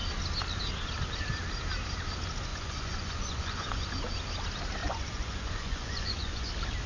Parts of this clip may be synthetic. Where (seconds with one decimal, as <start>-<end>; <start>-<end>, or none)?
2.5-3.9; 4.8-6.5